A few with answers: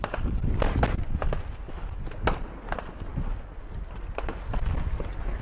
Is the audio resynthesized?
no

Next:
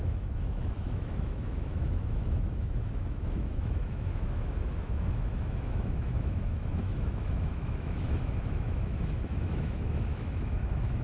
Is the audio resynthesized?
yes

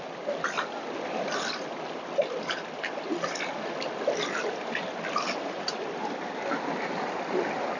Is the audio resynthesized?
no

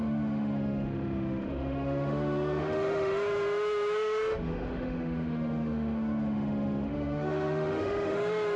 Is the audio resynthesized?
yes